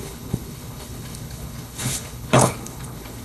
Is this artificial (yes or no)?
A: yes